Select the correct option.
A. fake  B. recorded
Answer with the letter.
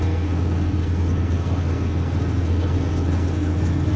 A